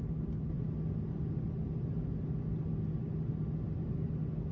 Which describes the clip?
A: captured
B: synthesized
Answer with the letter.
A